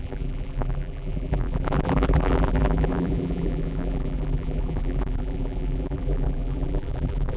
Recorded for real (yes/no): no